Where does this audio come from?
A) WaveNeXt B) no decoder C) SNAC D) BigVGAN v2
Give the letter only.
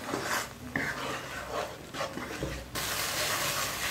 B